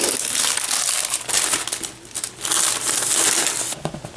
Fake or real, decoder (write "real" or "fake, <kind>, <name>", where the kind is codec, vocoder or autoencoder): real